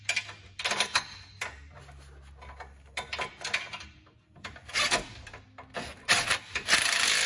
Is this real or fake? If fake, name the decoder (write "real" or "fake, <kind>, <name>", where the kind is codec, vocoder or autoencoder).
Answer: real